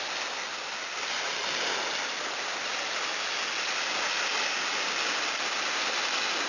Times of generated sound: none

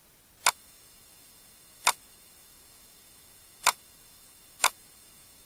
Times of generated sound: 0.5-5.5 (autoencoder, DAC-VAE)

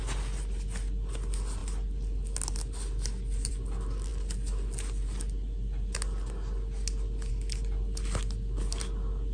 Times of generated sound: none

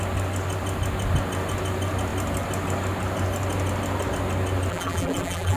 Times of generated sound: 4.7-5.6 (vocoder, BigVGAN v2)

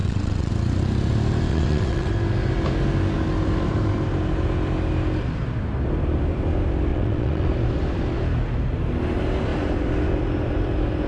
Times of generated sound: 0.0-0.5 (vocoder, WaveNeXt); 1.5-2.1; 6.9-7.5

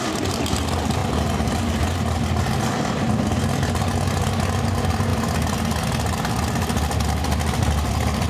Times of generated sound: none

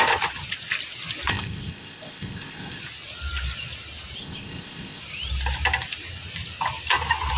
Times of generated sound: 1.3-2.8 (codec, ZipCodec); 4.2-5.0